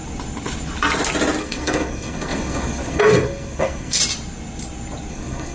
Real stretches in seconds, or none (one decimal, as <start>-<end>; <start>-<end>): 0.0-1.4; 4.0-5.1